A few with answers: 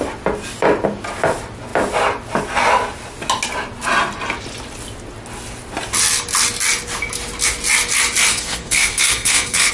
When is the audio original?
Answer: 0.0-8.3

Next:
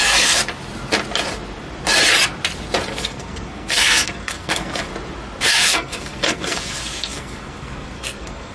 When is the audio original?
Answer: 0.4-2.9; 4.9-5.4

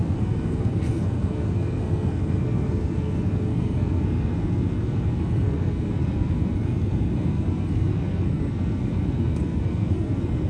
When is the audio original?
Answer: none

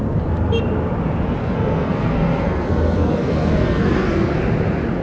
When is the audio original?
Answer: 0.0-1.4; 4.4-5.0

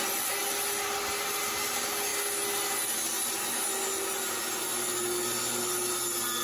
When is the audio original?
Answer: 0.0-6.4

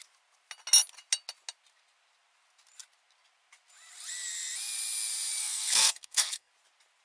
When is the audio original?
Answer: 0.0-5.4; 6.5-7.0